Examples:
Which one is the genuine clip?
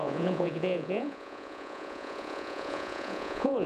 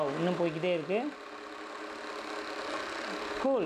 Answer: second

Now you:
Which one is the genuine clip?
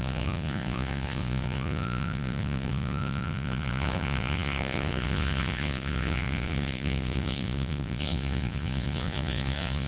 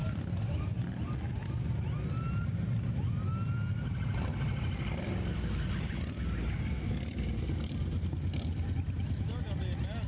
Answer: second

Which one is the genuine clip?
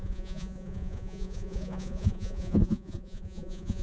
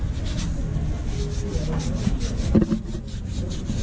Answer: second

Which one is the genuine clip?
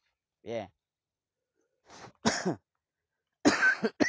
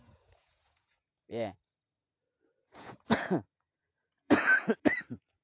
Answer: first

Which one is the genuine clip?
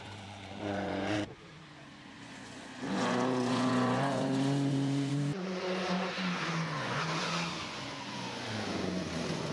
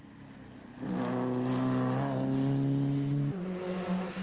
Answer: second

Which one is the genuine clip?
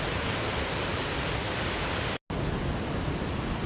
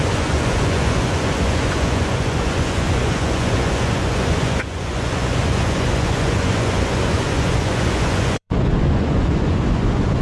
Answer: first